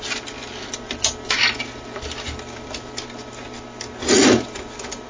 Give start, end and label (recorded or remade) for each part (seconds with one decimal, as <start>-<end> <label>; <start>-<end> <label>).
0.0-5.1 recorded